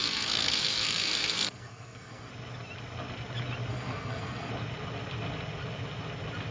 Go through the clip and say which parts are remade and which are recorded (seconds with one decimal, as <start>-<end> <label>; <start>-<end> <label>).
0.0-2.3 remade; 2.3-3.7 recorded; 3.7-4.5 remade; 4.5-6.5 recorded